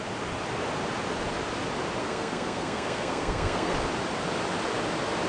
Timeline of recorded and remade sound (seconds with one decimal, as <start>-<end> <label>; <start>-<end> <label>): 0.0-2.0 recorded; 2.0-3.7 remade; 3.7-5.3 recorded